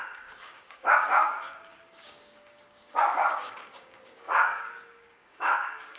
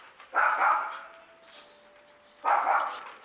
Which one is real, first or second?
second